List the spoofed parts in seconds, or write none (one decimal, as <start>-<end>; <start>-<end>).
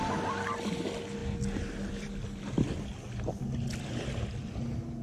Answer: none